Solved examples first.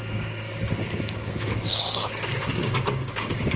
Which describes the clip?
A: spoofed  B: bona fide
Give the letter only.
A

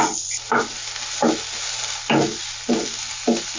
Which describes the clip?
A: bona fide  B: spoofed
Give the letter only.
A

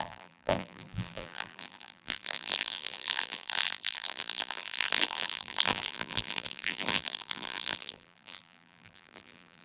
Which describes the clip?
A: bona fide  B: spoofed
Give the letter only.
B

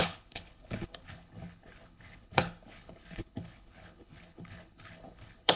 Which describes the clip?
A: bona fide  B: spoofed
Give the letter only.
B